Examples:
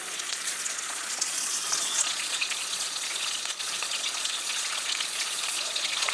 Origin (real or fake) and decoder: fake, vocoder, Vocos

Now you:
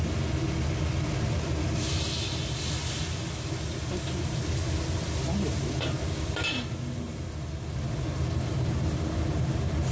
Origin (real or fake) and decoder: real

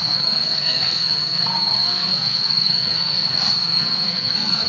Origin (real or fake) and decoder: fake, codec, SNAC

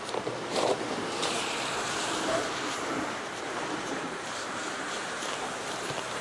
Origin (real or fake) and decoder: fake, vocoder, BigVGAN v2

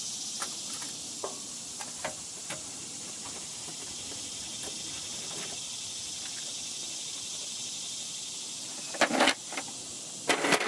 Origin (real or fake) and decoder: real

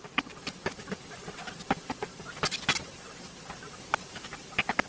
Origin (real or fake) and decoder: real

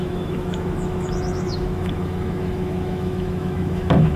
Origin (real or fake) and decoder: fake, autoencoder, DAC-VAE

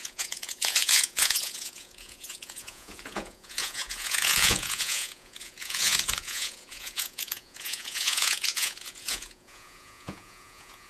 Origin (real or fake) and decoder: fake, vocoder, Vocos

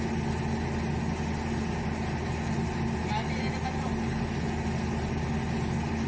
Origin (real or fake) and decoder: real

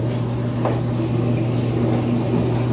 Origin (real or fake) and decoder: real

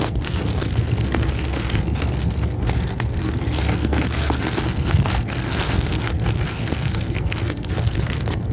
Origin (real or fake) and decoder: fake, codec, SNAC